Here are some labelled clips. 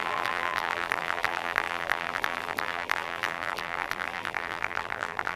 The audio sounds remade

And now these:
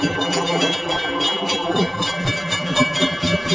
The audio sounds remade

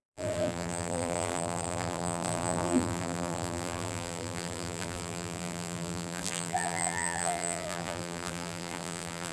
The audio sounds remade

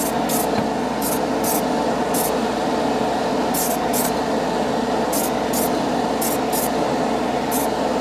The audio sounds recorded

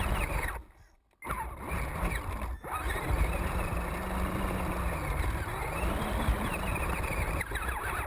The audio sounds recorded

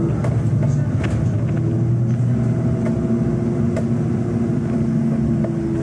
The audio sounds recorded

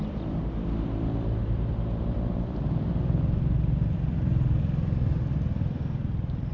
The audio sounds remade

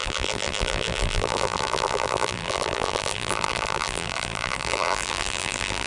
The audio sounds remade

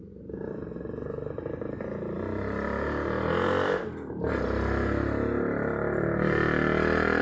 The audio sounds recorded